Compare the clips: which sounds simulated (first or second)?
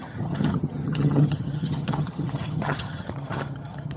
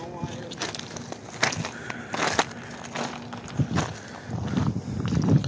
first